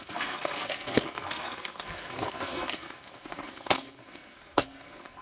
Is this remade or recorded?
remade